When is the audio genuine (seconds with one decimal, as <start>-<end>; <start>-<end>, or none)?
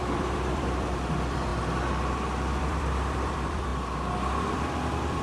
1.5-2.6; 3.7-4.5